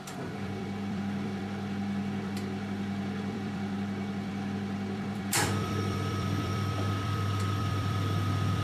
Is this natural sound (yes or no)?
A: no